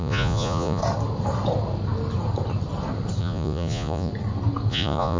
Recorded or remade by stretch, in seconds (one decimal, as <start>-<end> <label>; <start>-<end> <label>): 0.0-0.8 remade; 0.8-3.2 recorded; 3.2-4.1 remade; 4.1-4.7 recorded; 4.7-5.2 remade